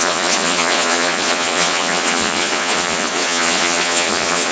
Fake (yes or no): yes